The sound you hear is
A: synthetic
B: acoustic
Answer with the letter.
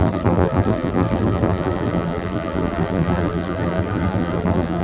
A